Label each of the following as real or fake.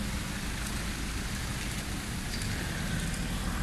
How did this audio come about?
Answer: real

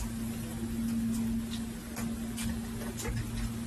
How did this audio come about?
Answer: real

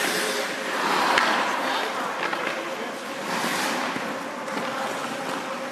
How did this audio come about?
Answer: real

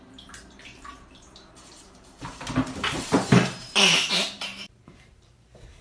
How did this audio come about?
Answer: fake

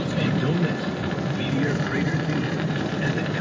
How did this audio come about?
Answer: fake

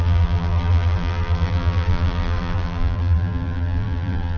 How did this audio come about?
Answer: fake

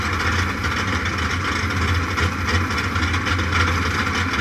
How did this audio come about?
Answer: real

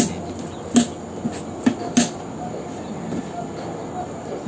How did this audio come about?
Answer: real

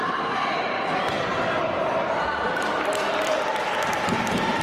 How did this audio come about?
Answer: fake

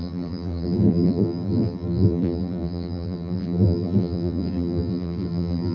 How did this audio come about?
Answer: fake